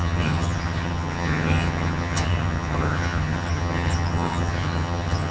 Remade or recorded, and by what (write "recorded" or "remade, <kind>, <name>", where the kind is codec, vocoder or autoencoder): remade, vocoder, HiFi-GAN